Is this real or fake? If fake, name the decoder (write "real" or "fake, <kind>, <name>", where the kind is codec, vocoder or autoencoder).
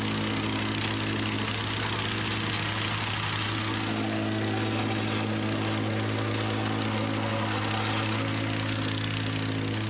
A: real